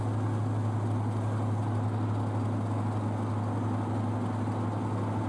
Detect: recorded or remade recorded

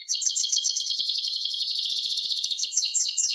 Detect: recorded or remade remade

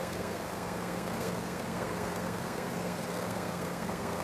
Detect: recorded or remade remade